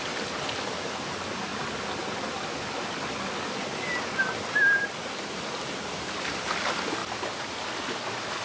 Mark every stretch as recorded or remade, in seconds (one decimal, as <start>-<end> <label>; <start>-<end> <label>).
0.0-8.4 recorded